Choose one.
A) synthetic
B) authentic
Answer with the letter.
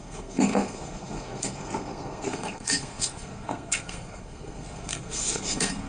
A